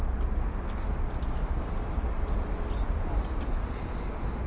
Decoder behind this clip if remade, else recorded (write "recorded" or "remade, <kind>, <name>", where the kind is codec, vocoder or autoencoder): recorded